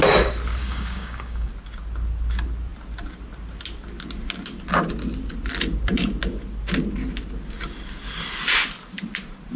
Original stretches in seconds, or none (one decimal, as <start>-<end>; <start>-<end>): 0.0-0.6; 1.5-9.6